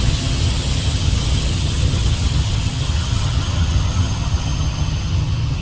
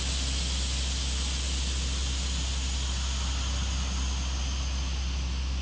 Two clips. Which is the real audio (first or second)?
second